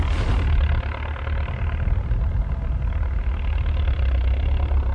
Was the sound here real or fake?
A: real